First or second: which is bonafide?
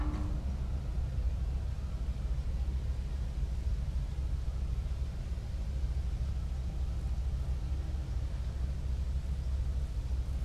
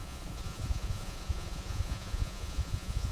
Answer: first